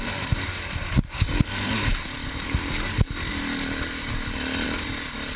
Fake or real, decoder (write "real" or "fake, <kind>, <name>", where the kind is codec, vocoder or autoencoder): real